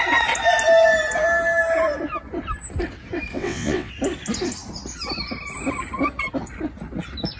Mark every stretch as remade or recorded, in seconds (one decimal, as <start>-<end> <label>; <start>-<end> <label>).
0.0-3.3 recorded; 3.3-3.9 remade; 3.9-7.4 recorded